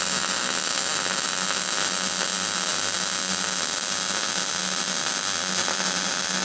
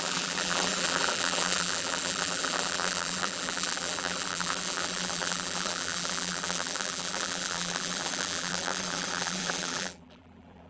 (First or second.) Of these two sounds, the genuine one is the first